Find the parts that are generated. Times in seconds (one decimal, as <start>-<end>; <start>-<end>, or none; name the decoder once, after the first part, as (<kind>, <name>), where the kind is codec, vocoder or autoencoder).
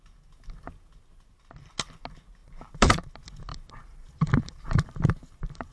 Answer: 2.4-3.1 (vocoder, BigVGAN v2); 3.5-5.7